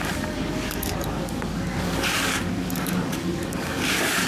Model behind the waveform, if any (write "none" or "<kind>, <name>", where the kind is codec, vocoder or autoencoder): codec, DAC